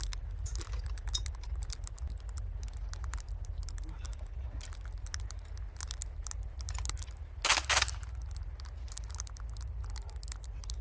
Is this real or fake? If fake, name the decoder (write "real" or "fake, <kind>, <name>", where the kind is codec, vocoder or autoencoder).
real